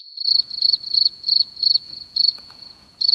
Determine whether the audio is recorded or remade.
remade